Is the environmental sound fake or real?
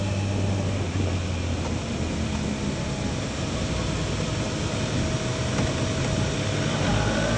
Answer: real